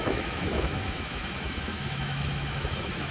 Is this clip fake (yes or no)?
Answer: yes